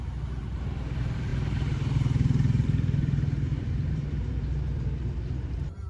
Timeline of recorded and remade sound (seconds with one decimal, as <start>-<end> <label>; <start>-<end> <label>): 0.0-5.9 remade